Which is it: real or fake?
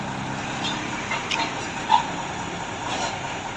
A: real